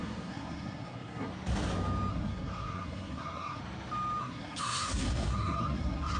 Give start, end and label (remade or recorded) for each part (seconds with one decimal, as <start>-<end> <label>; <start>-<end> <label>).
0.0-1.3 remade; 1.3-2.1 recorded; 2.1-3.6 remade; 3.6-4.2 recorded; 4.2-6.2 remade